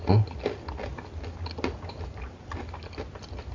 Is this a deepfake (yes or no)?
no